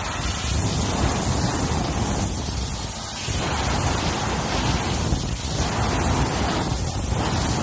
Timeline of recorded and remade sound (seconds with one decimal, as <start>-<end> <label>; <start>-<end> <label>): 0.0-7.6 recorded